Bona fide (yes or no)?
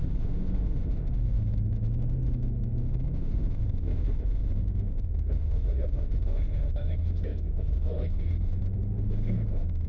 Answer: no